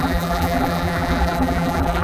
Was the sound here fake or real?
fake